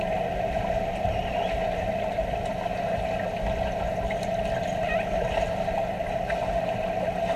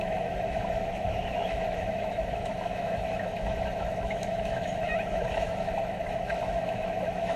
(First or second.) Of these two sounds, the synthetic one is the second